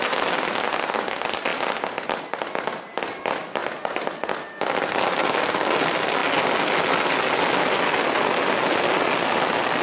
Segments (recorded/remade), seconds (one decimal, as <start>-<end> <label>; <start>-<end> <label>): 0.0-9.8 recorded